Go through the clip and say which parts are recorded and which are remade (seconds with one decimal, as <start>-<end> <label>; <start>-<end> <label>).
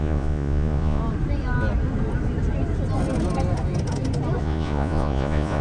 0.0-1.0 remade; 1.0-4.4 recorded; 4.4-5.6 remade